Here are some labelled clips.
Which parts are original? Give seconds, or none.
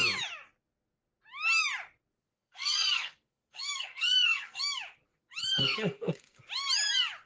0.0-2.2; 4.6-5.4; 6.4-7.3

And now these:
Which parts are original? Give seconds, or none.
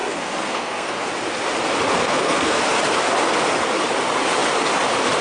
1.1-1.9; 2.6-5.2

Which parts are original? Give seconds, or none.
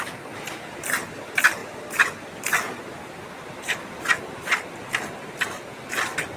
0.0-6.4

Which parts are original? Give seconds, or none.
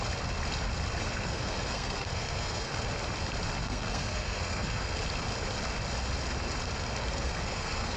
0.0-1.0; 2.7-3.6; 5.0-7.1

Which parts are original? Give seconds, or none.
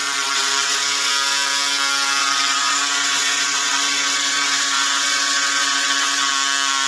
1.1-2.2; 6.3-6.9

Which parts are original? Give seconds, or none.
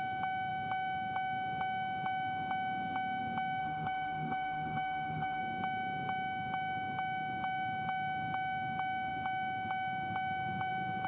0.0-3.6; 5.4-11.1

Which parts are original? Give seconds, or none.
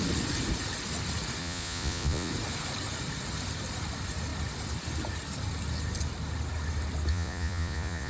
0.0-1.4; 2.3-7.1